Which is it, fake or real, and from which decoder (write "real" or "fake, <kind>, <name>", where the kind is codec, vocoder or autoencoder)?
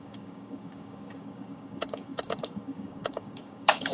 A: fake, codec, DAC